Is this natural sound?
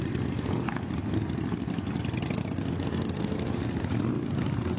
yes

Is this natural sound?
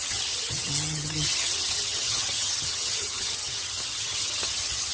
no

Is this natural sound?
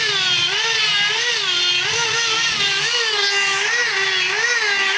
yes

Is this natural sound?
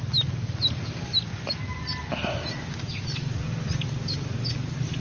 yes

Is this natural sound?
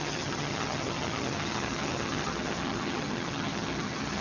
no